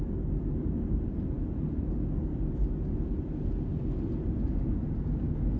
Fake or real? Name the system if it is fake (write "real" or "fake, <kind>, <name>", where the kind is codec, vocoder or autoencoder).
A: real